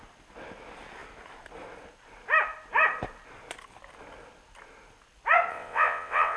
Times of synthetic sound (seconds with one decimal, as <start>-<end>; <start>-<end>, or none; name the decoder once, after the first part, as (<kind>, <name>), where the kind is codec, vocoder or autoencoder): 5.5-6.4 (vocoder, WaveNeXt)